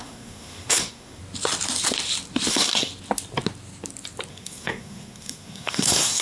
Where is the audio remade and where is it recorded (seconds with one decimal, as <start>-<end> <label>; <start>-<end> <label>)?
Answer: 0.0-1.2 remade; 1.2-2.5 recorded; 2.5-2.9 remade; 2.9-4.3 recorded; 4.3-6.2 remade